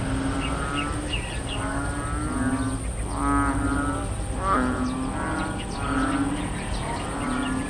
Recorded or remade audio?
recorded